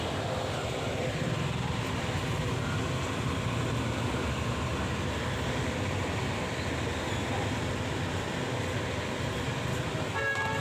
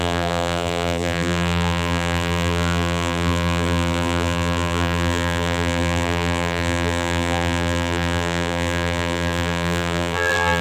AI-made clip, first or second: second